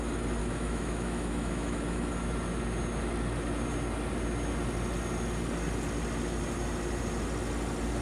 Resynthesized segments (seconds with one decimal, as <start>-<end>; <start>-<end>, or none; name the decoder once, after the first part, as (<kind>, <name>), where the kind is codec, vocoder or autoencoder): 0.4-2.1 (autoencoder, DAC-VAE)

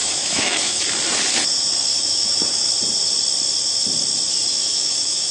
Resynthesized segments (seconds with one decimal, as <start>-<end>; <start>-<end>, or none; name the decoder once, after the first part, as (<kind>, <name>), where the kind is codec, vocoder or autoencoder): 0.0-0.8 (autoencoder, DAC-VAE); 1.9-2.7; 4.5-5.3